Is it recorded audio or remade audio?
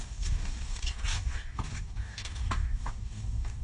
remade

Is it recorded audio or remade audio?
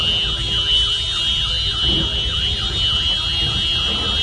recorded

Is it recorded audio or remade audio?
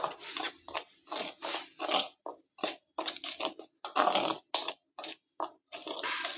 recorded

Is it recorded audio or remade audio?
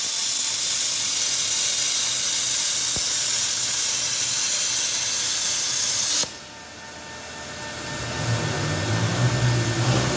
recorded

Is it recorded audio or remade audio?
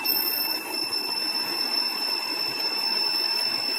recorded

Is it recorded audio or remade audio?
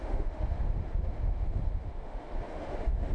remade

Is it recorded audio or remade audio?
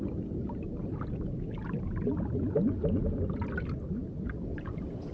recorded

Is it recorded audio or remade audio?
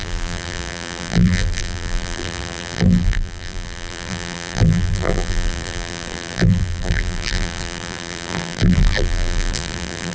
remade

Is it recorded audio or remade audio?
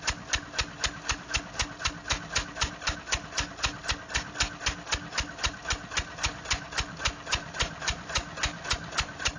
recorded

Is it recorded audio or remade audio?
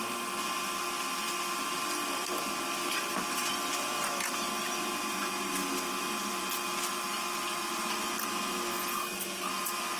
recorded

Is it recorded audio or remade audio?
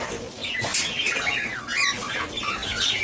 recorded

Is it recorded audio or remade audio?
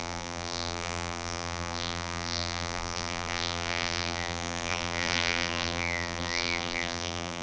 remade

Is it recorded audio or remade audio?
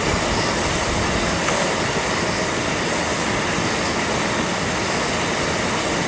recorded